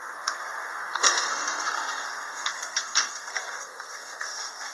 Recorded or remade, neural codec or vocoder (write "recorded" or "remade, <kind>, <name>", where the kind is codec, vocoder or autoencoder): remade, codec, SNAC